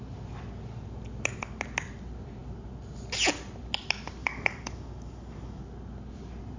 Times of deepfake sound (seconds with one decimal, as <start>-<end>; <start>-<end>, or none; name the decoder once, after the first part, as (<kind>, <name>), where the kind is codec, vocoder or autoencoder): 4.2-5.6 (codec, DAC)